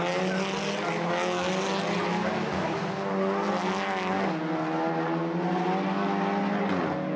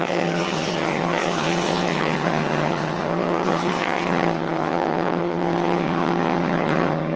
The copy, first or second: second